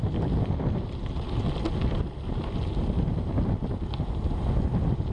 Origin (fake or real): real